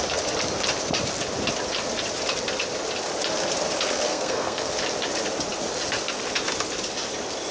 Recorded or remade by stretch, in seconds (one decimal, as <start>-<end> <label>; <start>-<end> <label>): 0.0-4.1 recorded; 4.1-4.7 remade; 4.7-7.5 recorded

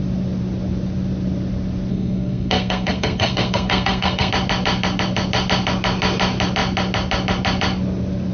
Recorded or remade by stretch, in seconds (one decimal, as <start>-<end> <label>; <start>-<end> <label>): 0.0-1.9 recorded; 1.9-4.3 remade; 4.3-8.3 recorded